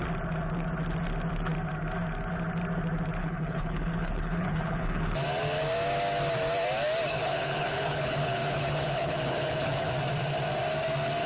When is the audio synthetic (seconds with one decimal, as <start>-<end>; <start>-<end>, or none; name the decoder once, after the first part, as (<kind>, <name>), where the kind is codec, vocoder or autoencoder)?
3.2-5.1 (codec, HILCodec); 7.1-9.9